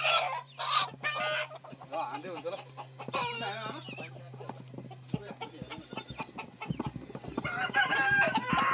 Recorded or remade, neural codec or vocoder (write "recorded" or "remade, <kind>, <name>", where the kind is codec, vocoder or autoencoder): recorded